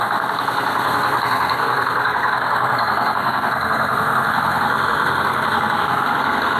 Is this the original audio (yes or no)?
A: no